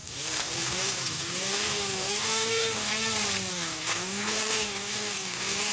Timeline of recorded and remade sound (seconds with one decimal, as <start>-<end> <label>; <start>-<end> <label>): 0.0-2.9 remade; 2.9-3.5 recorded; 3.5-5.7 remade